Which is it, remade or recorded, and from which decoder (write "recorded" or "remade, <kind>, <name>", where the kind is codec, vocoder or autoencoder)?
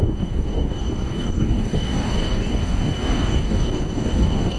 remade, codec, DAC